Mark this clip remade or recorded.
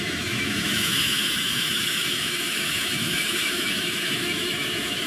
remade